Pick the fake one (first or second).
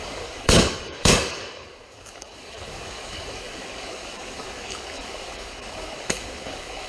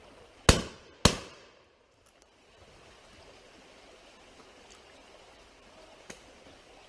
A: first